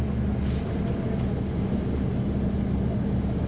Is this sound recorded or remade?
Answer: recorded